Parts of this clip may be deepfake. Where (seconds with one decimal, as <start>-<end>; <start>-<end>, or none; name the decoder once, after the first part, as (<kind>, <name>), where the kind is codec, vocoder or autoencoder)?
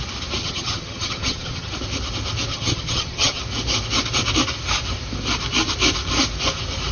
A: 0.4-1.7 (vocoder, HiFi-GAN); 2.5-3.4